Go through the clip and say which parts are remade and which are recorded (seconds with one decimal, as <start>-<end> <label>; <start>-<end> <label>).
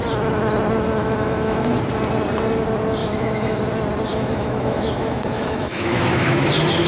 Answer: 0.0-1.0 recorded; 1.0-1.6 remade; 1.6-3.0 recorded; 3.0-3.6 remade; 3.6-4.1 recorded; 4.1-6.5 remade; 6.5-6.9 recorded